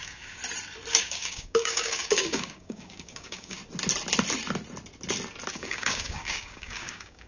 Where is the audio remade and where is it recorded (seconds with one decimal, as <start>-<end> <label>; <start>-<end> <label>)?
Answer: 0.0-0.4 remade; 0.4-0.9 recorded; 0.9-3.6 remade; 3.6-5.5 recorded; 5.5-7.3 remade